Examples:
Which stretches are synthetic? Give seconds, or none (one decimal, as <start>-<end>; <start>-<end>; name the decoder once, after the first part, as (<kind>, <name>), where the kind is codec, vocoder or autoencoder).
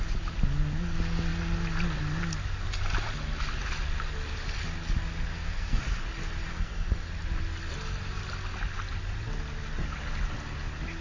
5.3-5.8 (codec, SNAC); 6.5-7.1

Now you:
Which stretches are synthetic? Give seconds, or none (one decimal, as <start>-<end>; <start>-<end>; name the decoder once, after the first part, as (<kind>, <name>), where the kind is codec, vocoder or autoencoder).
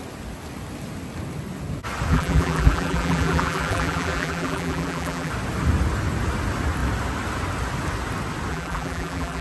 2.1-5.3 (vocoder, BigVGAN v2); 8.5-9.4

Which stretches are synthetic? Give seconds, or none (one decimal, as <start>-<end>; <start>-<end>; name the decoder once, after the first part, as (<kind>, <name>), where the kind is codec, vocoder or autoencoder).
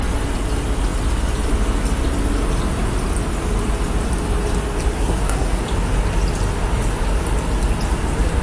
4.9-5.6 (codec, SNAC)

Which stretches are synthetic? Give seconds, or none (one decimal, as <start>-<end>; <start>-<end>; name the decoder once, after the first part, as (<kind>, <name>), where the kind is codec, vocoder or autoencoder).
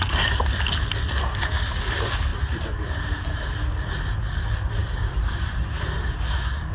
2.3-3.2 (vocoder, BigVGAN v2); 4.8-5.4